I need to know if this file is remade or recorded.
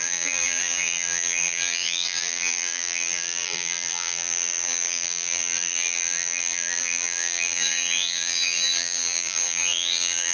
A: remade